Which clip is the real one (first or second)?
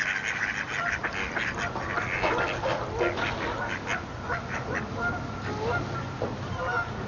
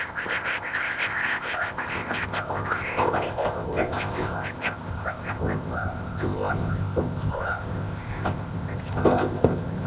first